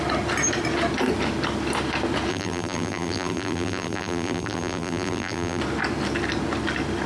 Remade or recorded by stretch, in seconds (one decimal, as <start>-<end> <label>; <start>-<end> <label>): 0.0-2.3 recorded; 2.3-5.6 remade; 5.6-7.1 recorded